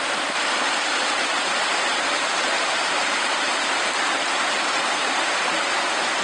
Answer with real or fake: fake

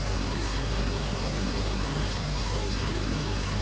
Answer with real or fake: fake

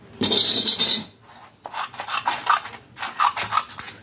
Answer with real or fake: real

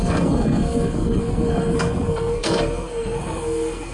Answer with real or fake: fake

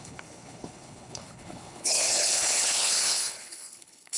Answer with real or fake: fake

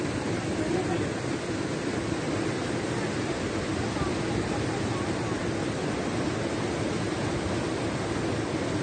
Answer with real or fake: real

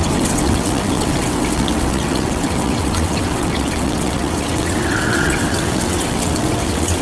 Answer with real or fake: fake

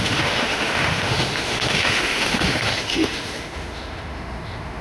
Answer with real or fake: fake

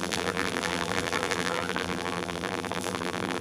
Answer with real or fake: fake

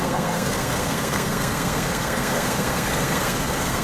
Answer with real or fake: fake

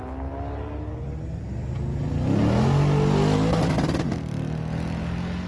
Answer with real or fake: real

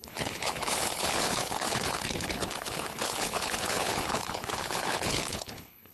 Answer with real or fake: fake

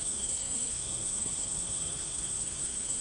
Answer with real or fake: fake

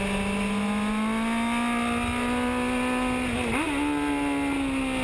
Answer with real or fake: real